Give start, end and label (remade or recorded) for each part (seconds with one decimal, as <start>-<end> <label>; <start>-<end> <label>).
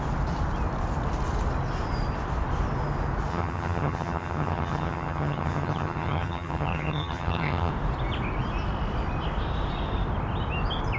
0.0-3.3 recorded; 3.3-7.7 remade; 7.7-11.0 recorded